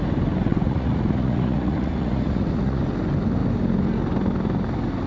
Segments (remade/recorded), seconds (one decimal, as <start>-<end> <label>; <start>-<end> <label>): 0.0-0.5 recorded; 0.5-2.8 remade; 2.8-5.1 recorded